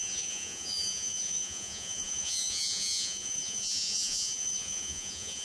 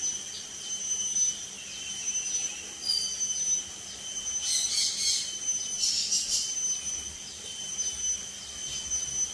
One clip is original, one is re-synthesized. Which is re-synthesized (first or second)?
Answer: first